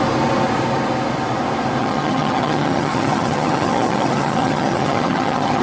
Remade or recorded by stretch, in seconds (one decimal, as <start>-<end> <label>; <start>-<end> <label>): 0.0-1.8 recorded; 1.8-5.6 remade